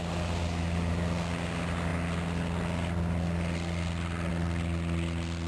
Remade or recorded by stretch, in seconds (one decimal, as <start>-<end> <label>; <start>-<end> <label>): 0.0-5.5 recorded